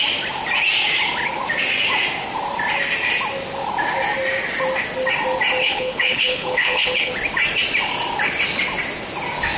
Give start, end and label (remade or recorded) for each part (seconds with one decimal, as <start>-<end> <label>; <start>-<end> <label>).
0.0-5.6 recorded; 5.6-7.1 remade; 7.1-9.6 recorded